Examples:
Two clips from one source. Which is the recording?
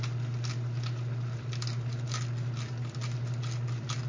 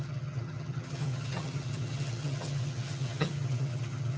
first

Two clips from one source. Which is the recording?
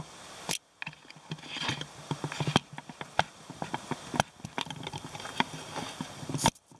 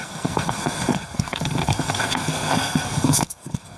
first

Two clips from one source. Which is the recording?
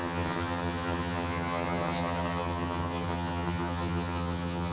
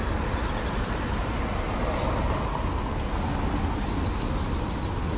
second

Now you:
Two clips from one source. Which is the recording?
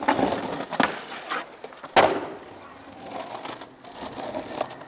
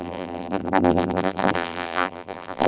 first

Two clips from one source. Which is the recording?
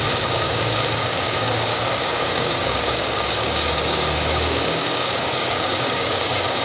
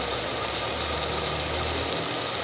second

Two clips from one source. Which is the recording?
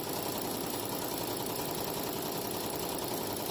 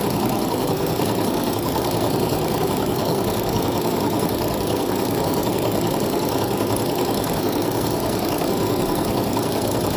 first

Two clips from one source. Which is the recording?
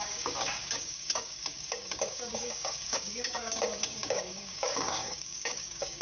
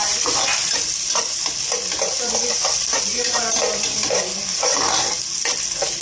second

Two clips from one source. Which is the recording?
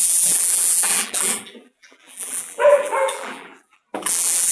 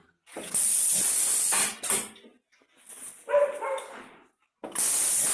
second